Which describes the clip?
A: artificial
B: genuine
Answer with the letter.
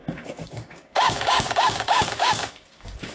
A